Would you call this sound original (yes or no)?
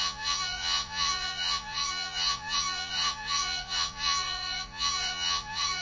no